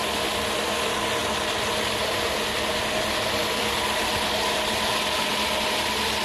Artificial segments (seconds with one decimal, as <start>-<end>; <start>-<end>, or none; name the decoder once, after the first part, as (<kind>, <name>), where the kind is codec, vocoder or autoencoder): none